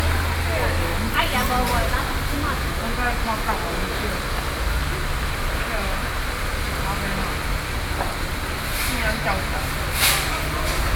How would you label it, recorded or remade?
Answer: recorded